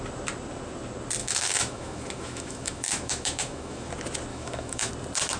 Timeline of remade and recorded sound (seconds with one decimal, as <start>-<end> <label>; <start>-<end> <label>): 0.0-1.2 recorded; 1.2-3.9 remade; 3.9-4.3 recorded; 4.3-4.9 remade; 4.9-5.4 recorded